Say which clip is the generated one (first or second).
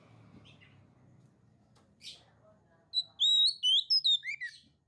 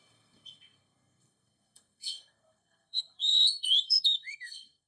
second